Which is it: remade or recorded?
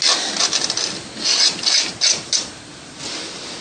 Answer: recorded